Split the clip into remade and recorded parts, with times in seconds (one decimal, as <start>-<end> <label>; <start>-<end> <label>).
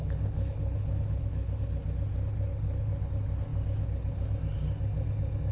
0.0-1.6 remade; 1.6-2.5 recorded; 2.5-3.1 remade; 3.1-5.5 recorded